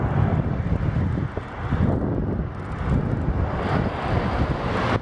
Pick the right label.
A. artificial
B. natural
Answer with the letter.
B